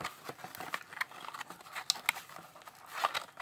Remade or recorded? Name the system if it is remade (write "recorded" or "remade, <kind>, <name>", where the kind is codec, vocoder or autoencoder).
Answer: recorded